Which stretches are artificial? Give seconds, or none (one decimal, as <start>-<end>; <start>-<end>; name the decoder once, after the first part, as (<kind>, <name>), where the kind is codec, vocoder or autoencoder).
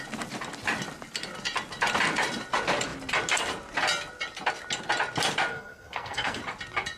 5.5-6.4 (codec, SNAC)